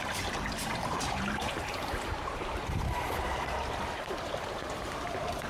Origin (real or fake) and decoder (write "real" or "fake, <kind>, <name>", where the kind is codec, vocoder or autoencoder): fake, vocoder, BigVGAN v2